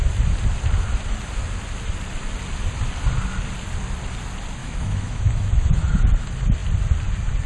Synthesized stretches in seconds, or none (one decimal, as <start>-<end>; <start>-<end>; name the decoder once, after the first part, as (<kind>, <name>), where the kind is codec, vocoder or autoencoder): 4.6-6.0 (autoencoder, DAC-VAE)